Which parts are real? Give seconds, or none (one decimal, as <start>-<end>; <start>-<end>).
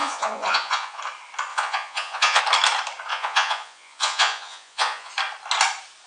1.0-1.5; 2.4-3.1; 5.1-6.1